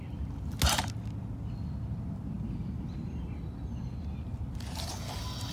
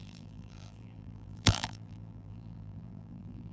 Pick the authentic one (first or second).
first